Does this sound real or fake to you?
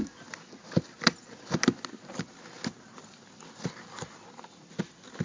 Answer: real